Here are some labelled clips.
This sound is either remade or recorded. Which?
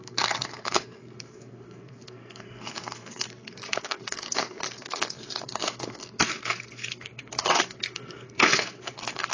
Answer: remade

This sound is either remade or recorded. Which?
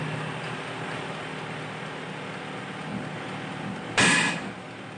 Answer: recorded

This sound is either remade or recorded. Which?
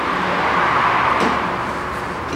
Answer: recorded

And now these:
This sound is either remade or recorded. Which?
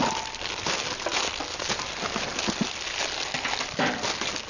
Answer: recorded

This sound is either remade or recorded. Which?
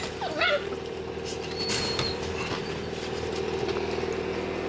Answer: recorded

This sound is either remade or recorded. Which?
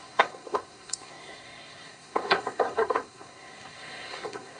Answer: remade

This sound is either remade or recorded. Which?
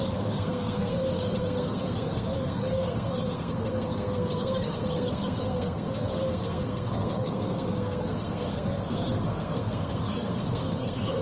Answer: remade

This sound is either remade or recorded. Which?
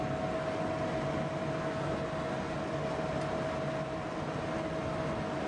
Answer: recorded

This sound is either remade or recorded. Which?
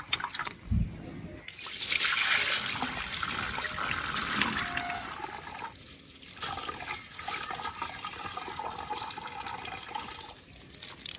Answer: recorded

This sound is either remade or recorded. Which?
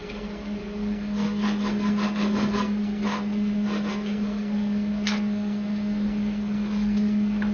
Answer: remade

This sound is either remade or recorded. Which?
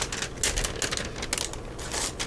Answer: recorded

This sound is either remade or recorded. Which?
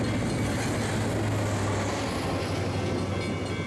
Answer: recorded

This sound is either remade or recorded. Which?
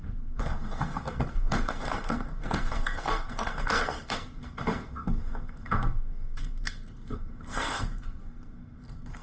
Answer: remade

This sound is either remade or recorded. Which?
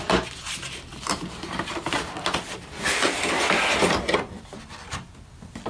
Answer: recorded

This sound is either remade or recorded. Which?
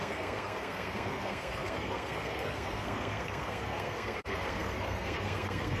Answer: remade